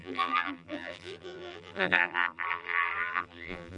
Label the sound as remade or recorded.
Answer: remade